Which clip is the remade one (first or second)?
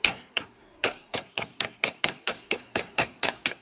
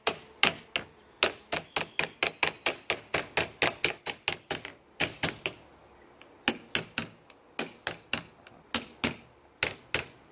first